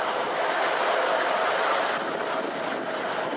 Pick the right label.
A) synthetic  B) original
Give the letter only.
B